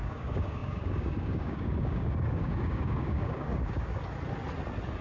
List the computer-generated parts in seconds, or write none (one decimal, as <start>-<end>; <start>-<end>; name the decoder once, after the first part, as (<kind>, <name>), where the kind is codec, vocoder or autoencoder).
0.0-4.0 (codec, DAC)